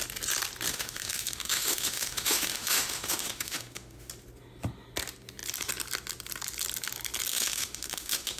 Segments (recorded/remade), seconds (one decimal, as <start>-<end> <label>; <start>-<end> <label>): 0.0-0.7 recorded; 0.7-4.1 remade; 4.1-7.3 recorded; 7.3-8.4 remade